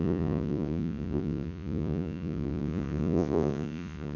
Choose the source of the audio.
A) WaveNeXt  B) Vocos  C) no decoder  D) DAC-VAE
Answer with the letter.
B